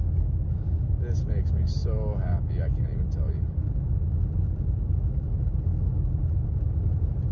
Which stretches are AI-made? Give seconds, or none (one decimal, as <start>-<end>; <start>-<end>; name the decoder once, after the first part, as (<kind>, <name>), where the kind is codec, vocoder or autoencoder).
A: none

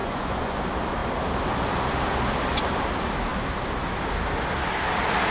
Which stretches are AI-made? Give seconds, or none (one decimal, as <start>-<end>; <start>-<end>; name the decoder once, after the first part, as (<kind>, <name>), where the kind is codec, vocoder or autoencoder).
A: 0.0-0.6 (vocoder, Vocos)

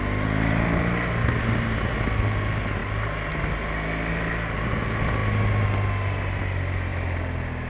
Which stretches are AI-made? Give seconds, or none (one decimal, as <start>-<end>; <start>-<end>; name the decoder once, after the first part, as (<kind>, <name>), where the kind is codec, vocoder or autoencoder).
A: none

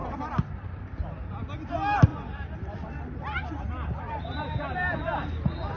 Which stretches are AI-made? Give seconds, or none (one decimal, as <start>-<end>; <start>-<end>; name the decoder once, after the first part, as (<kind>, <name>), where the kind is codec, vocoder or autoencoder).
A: 0.0-0.8 (vocoder, BigVGAN v2); 2.1-4.4